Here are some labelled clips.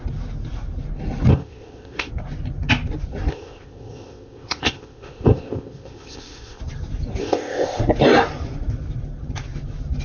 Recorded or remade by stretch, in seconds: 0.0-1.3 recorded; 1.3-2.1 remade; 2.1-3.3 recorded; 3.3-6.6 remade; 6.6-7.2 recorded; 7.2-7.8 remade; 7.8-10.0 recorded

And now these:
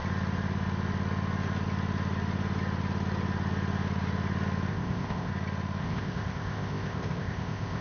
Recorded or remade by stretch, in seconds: 0.0-4.7 recorded; 4.7-5.3 remade; 5.3-5.8 recorded; 5.8-7.8 remade